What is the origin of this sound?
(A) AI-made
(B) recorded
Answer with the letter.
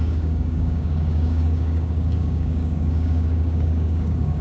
A